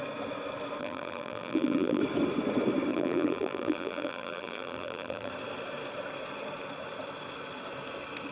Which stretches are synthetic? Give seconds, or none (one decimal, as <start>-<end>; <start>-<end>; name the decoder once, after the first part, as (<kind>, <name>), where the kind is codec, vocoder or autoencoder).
0.8-2.0 (vocoder, BigVGAN v2); 2.9-5.3